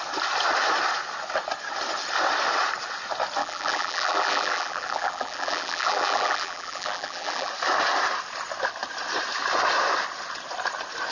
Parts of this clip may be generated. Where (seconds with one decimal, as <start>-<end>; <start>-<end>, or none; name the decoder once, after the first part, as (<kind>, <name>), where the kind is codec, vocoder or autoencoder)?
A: 3.4-7.5 (vocoder, BigVGAN v2)